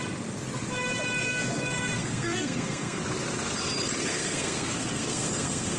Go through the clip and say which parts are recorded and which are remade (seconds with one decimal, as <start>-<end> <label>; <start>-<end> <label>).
0.0-1.2 recorded; 1.2-3.0 remade; 3.0-4.1 recorded; 4.1-5.8 remade